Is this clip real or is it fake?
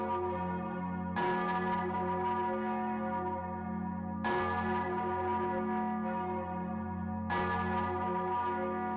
real